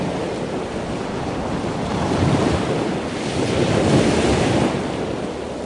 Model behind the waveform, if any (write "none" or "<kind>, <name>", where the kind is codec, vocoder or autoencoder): none